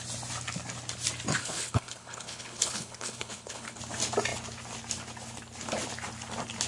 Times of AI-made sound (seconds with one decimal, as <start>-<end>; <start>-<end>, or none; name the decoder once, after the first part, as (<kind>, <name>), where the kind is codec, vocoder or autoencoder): 1.4-3.8 (codec, HILCodec)